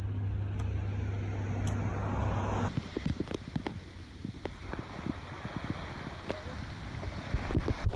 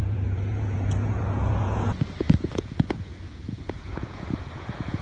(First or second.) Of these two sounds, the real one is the first